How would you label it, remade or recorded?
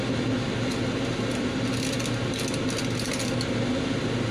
recorded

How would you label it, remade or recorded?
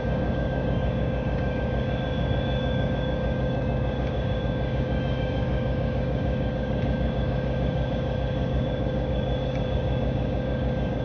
remade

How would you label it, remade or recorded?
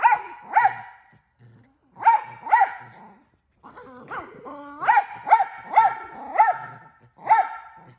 recorded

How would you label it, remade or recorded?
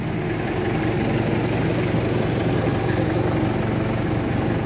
recorded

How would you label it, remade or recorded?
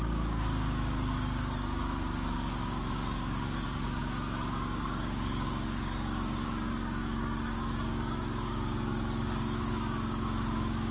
remade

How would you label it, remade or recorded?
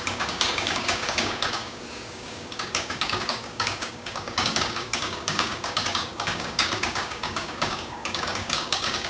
remade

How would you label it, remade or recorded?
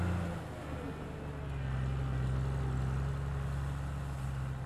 recorded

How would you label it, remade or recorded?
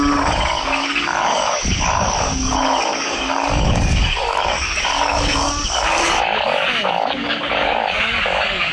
remade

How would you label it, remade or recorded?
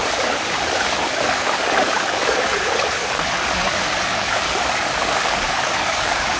remade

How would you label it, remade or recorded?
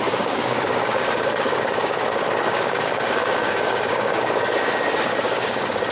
remade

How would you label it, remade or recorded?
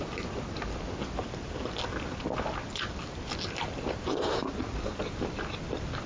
recorded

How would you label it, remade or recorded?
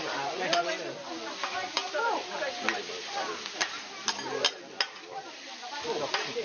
recorded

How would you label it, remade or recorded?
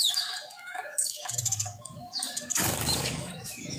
remade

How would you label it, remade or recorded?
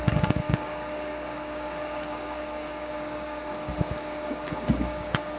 remade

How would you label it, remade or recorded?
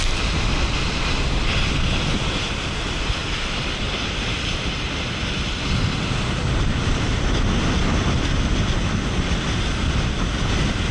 recorded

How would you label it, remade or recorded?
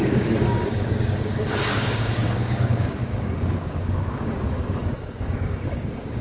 remade